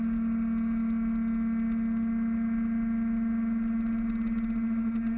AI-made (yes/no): no